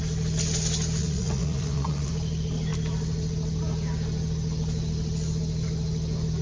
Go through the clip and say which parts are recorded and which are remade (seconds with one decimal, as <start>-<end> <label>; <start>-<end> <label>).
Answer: 0.0-1.0 recorded; 1.0-2.1 remade; 2.1-6.4 recorded